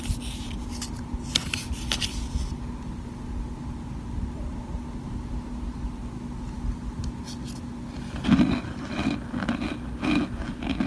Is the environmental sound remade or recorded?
recorded